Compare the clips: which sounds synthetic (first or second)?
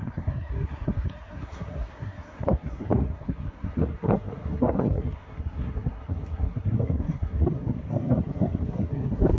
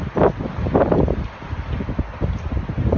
first